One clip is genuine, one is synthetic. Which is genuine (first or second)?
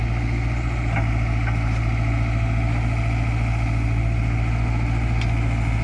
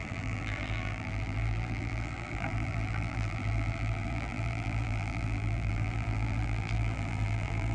first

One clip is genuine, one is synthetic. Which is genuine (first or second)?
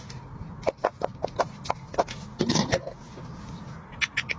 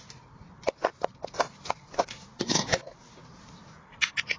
first